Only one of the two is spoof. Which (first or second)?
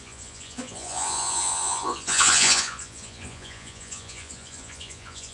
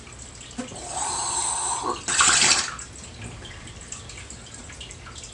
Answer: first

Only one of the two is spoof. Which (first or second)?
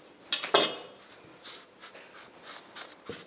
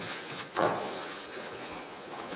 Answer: second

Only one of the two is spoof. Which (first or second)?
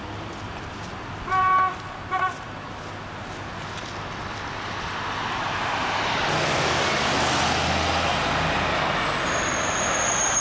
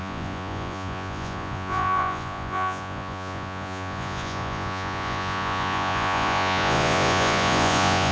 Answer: second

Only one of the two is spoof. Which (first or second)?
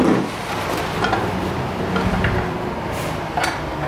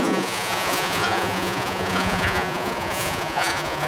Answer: second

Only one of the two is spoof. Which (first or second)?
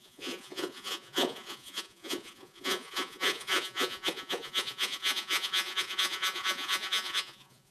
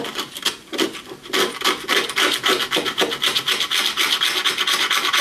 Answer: first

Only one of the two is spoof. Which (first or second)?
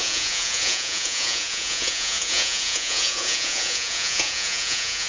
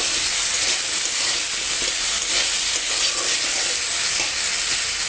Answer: first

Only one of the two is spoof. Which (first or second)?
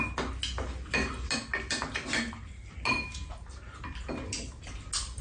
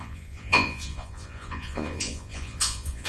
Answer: second